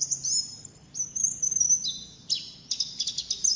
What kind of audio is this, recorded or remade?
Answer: recorded